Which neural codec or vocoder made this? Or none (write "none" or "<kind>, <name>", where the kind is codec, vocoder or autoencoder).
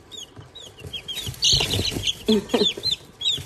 vocoder, BigVGAN v2